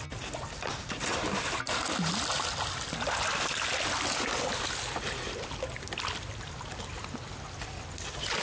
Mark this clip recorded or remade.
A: recorded